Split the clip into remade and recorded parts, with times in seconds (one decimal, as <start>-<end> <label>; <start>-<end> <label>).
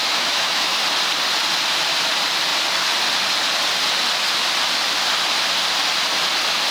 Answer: 0.0-0.8 remade; 0.8-6.7 recorded